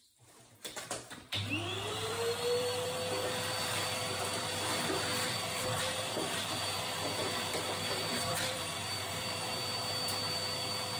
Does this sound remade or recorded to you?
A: remade